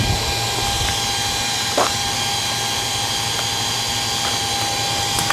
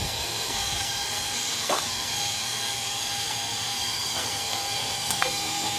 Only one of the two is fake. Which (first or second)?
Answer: second